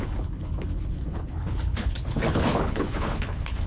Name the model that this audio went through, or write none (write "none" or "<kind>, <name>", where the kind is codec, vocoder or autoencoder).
codec, HILCodec